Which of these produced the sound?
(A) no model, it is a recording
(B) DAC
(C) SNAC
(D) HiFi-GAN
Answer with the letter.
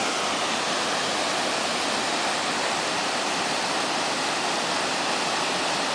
A